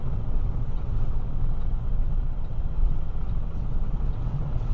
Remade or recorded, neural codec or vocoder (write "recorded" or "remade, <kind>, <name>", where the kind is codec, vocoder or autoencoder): remade, vocoder, WaveNeXt